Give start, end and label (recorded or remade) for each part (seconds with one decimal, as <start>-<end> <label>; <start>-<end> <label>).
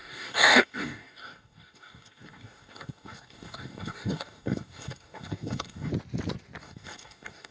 0.0-5.9 remade; 5.9-6.6 recorded; 6.6-7.5 remade